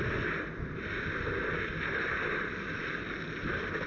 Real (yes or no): yes